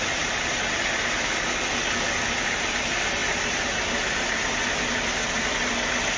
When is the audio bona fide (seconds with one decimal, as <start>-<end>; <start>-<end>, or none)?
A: 0.0-6.2